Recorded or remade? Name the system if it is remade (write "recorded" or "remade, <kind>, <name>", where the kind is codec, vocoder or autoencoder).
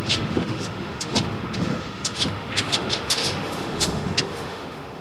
remade, autoencoder, DAC-VAE